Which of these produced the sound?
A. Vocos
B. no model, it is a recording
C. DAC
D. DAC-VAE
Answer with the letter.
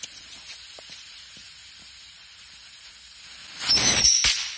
B